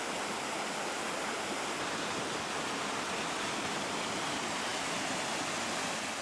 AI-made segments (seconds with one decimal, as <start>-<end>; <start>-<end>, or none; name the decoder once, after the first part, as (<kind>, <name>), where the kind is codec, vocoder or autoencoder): none